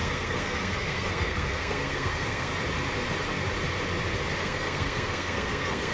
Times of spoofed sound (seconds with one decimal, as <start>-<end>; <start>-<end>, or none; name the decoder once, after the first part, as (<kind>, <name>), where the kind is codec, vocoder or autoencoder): 0.0-2.5 (codec, SNAC); 4.4-5.9